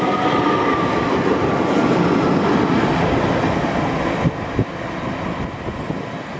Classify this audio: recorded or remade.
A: recorded